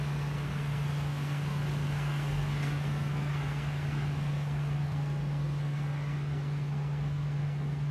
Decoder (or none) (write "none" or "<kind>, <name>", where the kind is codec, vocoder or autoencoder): codec, SNAC